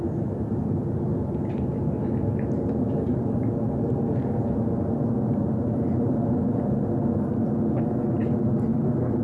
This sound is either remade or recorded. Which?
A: recorded